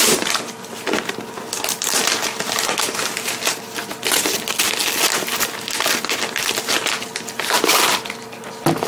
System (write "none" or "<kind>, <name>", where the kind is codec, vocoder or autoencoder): none